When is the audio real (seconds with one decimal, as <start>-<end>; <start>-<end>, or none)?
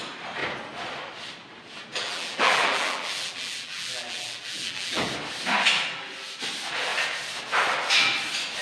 0.0-1.9; 5.1-8.6